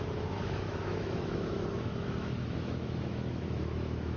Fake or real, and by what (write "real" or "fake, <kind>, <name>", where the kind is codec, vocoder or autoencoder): fake, autoencoder, DAC-VAE